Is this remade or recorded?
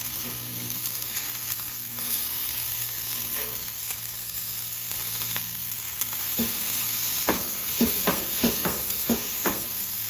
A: remade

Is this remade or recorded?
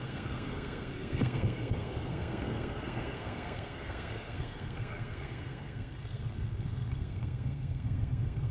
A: remade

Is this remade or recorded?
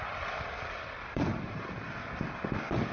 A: recorded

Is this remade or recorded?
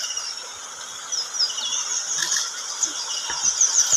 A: recorded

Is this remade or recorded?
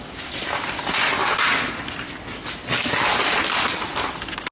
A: recorded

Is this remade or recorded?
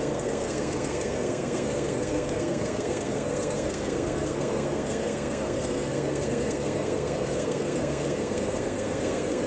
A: remade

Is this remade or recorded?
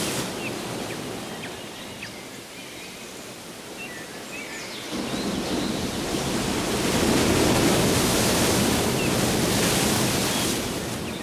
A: recorded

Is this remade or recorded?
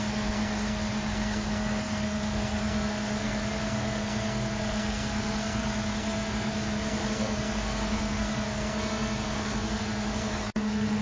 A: remade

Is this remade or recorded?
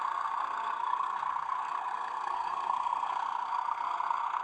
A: remade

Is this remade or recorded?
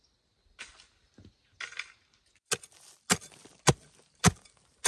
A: recorded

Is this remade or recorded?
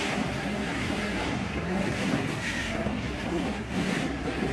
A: remade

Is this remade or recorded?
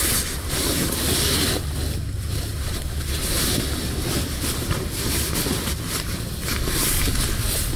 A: recorded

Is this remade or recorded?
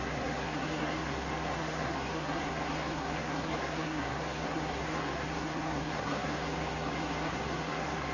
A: remade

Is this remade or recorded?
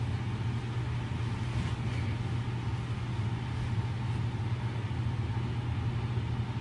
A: recorded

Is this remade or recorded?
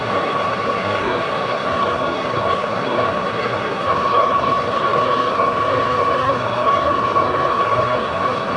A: remade